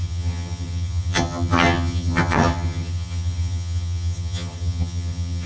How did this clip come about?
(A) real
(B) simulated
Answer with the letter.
B